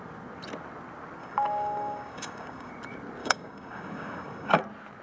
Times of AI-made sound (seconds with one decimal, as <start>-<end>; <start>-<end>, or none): 1.2-2.7; 3.2-4.6